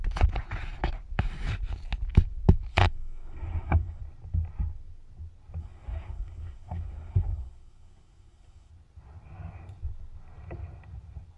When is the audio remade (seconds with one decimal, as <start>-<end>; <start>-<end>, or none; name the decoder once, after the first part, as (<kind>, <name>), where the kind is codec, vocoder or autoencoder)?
2.7-4.0 (codec, SNAC); 5.6-8.7